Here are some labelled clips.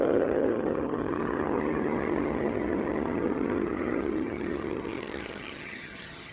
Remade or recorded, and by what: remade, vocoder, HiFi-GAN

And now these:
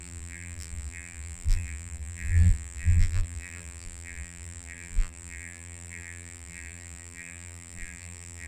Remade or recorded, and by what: remade, vocoder, BigVGAN v2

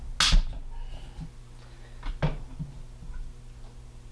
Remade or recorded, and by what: recorded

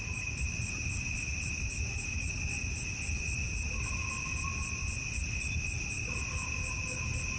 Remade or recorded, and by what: recorded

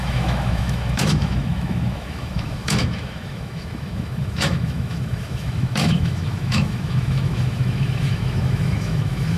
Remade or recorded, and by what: remade, autoencoder, DAC-VAE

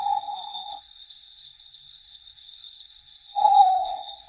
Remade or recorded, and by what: remade, codec, SNAC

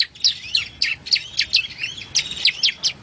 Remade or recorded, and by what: recorded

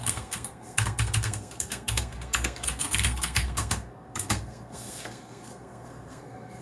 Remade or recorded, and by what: remade, codec, SNAC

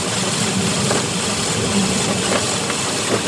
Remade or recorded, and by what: remade, vocoder, BigVGAN v2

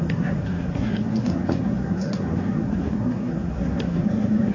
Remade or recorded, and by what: remade, codec, SNAC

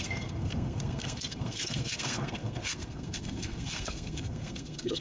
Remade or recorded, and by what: remade, codec, SNAC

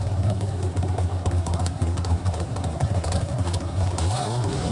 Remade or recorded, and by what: remade, codec, SNAC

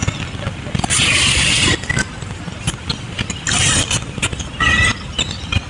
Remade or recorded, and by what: recorded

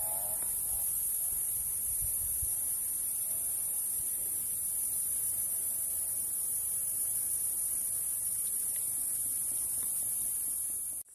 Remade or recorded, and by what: recorded